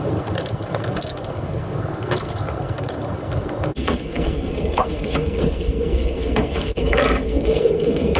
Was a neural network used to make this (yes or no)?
yes